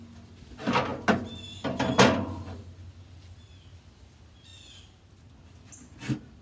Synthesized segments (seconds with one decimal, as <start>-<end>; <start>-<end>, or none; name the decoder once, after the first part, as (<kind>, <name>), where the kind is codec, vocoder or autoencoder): none